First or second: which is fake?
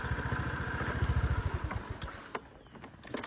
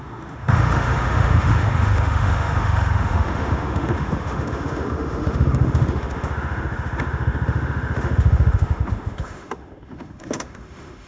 second